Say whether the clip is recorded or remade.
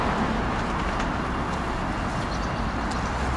recorded